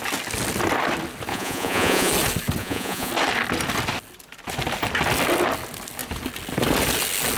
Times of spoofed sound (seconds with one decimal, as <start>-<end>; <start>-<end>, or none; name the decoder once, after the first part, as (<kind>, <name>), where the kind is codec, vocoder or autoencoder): 1.3-2.1 (vocoder, Vocos); 2.6-3.1